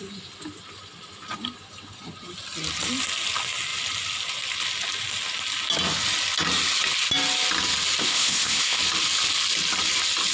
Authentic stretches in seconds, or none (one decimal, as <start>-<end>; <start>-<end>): 0.0-8.0; 8.8-10.3